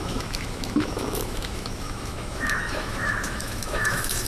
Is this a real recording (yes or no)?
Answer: no